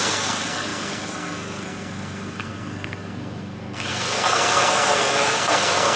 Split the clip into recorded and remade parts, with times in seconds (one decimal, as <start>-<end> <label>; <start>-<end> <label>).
0.0-6.0 remade